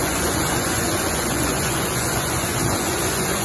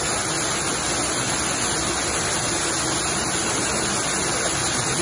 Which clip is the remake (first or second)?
first